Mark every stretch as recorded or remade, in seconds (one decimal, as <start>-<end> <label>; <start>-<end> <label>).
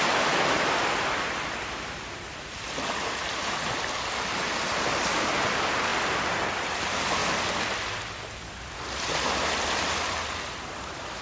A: 0.0-5.9 remade; 5.9-6.7 recorded; 6.7-11.2 remade